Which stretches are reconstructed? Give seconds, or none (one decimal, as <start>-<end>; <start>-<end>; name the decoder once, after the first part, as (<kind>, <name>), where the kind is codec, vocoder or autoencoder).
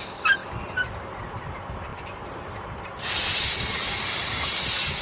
none